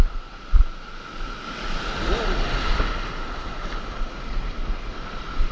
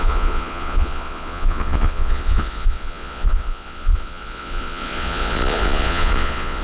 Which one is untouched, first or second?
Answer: first